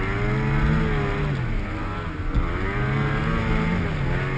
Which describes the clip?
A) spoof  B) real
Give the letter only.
B